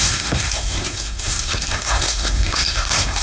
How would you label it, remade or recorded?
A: remade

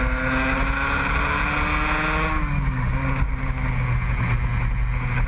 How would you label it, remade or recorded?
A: recorded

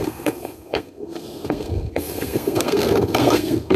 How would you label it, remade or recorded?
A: remade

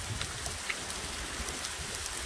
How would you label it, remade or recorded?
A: recorded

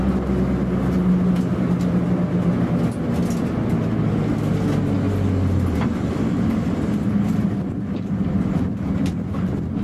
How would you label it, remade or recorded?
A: recorded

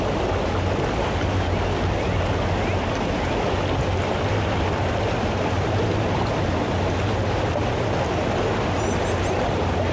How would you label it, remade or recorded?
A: recorded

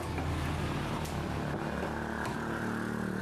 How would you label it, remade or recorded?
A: recorded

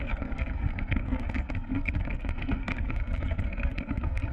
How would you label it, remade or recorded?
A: remade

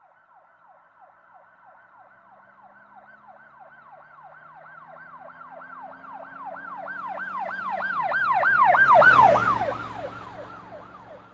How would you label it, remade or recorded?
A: recorded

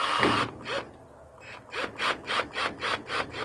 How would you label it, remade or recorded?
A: recorded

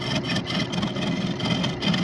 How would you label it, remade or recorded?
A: recorded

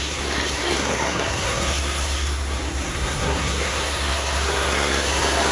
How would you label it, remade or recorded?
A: remade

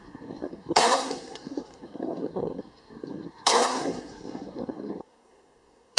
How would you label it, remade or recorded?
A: remade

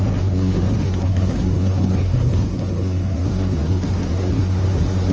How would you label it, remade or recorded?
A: remade